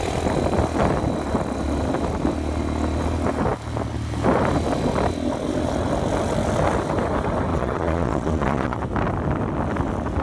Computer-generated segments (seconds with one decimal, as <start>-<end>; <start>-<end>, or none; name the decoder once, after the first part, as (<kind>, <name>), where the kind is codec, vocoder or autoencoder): 7.5-8.8 (vocoder, Vocos)